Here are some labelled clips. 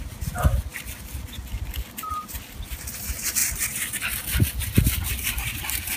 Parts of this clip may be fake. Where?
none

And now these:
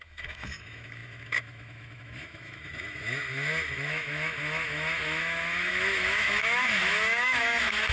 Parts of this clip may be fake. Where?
0.0-7.9